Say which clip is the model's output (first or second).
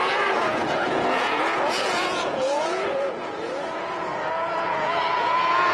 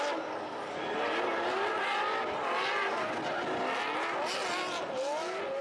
first